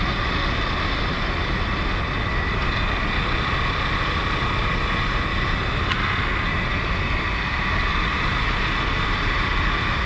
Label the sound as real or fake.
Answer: real